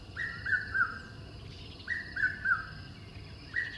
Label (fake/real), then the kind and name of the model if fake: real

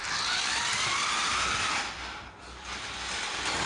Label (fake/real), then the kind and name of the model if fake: real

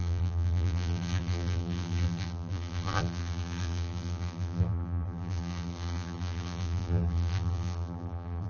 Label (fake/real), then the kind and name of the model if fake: fake, vocoder, BigVGAN v2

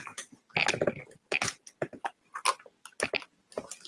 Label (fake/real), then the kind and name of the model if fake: real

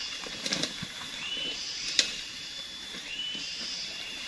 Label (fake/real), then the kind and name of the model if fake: fake, vocoder, BigVGAN v2